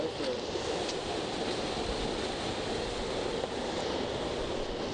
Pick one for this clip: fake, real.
real